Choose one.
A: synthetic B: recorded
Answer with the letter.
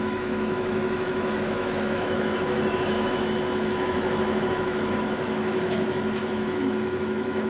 A